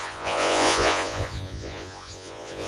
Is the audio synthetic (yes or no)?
yes